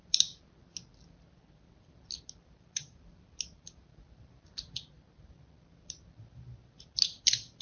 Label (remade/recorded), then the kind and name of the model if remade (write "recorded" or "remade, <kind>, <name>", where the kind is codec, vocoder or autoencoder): recorded